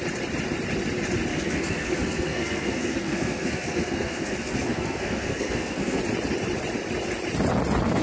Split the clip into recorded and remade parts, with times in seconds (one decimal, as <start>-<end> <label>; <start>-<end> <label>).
0.0-1.3 recorded; 1.3-6.0 remade; 6.0-8.0 recorded